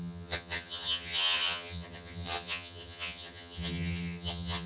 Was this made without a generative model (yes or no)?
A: no